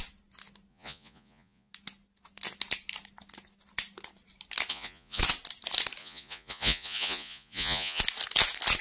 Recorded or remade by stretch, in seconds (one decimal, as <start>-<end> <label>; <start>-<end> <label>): 0.0-0.7 recorded; 0.7-1.7 remade; 1.7-4.7 recorded; 4.7-5.2 remade; 5.2-6.0 recorded; 6.0-8.0 remade; 8.0-8.8 recorded